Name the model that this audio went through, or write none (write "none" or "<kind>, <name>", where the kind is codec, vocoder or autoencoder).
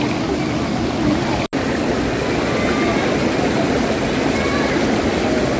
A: none